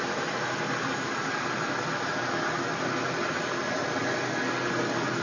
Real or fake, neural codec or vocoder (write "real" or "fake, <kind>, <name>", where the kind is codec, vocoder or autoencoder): real